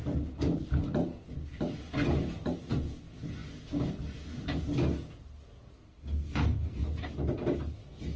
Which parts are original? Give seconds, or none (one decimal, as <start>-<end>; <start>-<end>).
0.0-5.7; 6.8-8.2